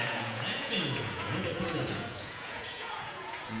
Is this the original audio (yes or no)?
no